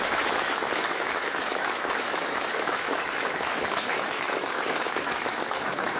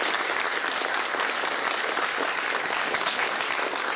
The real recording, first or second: second